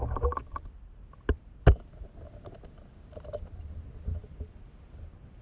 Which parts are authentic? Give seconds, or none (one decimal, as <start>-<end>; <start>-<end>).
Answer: 0.0-5.4